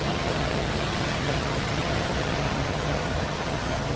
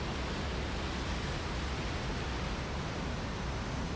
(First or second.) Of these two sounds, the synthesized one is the first